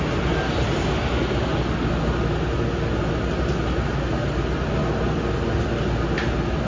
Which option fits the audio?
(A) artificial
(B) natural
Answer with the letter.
B